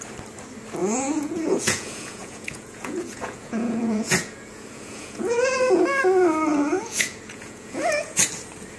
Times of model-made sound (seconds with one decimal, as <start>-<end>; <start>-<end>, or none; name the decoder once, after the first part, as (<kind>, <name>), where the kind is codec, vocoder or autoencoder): 0.8-5.8 (vocoder, Vocos); 6.5-8.3

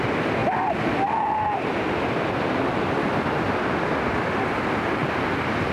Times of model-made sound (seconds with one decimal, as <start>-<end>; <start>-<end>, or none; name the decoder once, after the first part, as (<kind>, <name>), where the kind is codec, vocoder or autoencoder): none